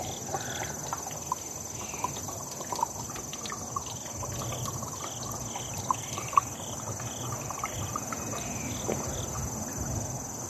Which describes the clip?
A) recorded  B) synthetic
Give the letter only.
A